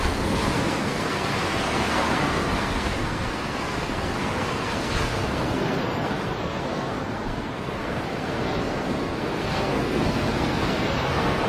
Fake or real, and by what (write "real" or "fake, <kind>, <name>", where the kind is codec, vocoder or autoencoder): fake, codec, SNAC